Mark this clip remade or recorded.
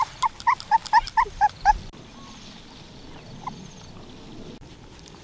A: recorded